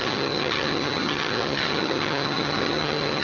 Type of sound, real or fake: fake